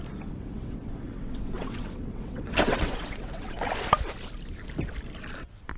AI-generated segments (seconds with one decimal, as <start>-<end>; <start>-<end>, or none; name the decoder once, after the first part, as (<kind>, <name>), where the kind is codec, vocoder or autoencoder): 0.4-3.6 (vocoder, WaveNeXt)